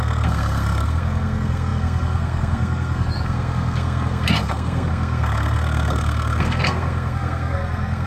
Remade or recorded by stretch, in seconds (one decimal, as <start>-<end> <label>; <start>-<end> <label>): 0.0-8.1 remade